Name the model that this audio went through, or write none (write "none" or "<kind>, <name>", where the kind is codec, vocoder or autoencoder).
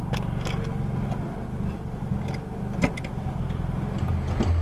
none